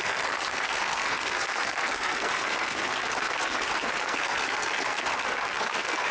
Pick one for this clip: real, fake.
fake